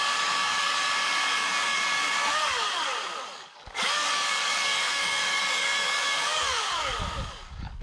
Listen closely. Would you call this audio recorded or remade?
remade